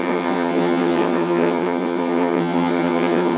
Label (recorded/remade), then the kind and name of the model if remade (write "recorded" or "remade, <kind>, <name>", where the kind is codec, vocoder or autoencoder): remade, vocoder, HiFi-GAN